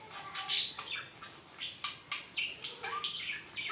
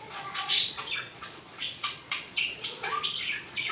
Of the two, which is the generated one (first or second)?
second